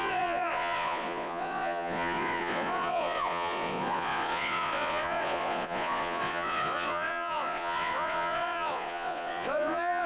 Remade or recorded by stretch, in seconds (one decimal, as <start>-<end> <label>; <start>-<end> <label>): 0.0-10.1 remade